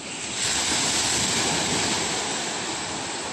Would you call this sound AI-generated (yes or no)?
no